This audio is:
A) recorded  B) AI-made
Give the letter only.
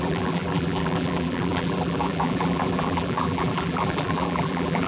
B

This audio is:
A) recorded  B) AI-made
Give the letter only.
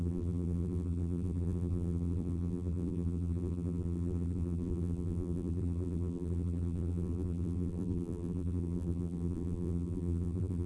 B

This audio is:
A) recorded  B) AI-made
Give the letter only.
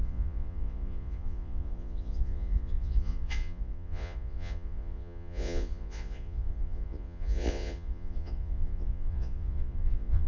B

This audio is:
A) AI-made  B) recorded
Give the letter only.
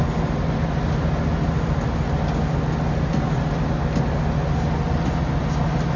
B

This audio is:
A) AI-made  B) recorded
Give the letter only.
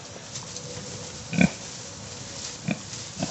B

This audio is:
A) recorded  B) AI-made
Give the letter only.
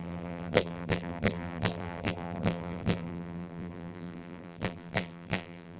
B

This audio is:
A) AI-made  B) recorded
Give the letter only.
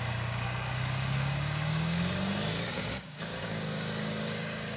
A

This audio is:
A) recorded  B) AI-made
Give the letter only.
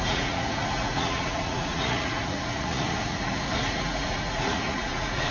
B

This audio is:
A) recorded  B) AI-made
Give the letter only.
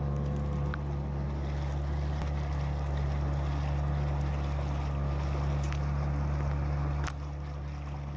A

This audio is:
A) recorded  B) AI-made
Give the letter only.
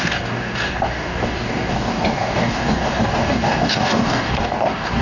B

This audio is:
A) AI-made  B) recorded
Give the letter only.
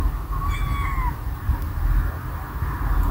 B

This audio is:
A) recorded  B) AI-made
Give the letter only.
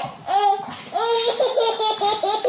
A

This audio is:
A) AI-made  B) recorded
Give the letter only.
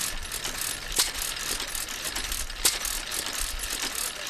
B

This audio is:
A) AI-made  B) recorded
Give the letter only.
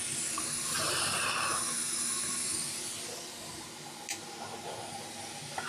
B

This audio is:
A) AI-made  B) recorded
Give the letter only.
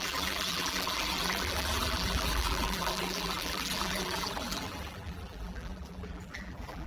A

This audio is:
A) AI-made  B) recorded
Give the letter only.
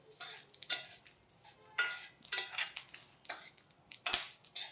B